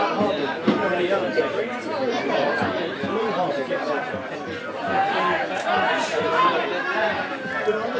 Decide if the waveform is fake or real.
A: real